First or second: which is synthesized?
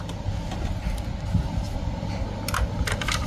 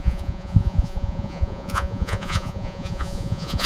second